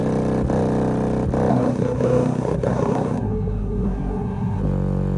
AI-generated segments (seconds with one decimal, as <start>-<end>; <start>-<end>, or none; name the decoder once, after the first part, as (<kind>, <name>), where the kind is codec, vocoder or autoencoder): 1.5-4.6 (codec, SNAC)